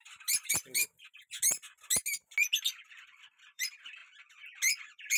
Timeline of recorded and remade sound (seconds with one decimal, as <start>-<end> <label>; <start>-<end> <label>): 0.0-0.8 remade; 0.8-2.7 recorded; 2.7-4.0 remade; 4.0-4.8 recorded; 4.8-5.2 remade